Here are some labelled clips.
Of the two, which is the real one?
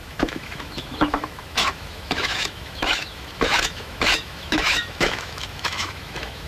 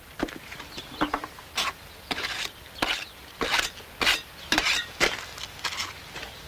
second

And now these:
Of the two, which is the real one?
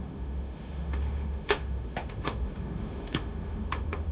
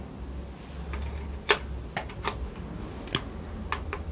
second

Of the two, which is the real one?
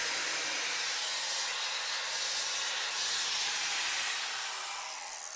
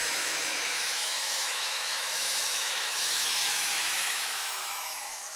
first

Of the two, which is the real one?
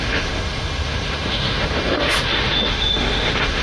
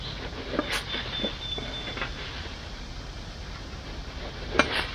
second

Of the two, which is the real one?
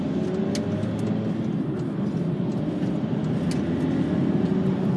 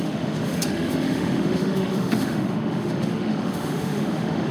first